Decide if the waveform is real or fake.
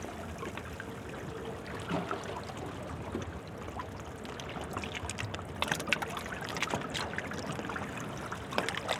real